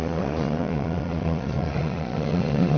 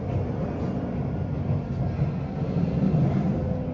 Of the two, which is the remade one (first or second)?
first